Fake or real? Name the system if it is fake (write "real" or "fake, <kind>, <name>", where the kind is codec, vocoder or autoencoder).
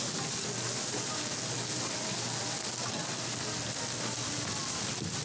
real